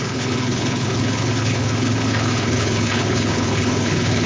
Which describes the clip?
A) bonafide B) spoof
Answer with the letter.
B